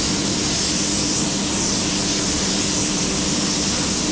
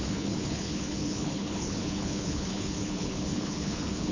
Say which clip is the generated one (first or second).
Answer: second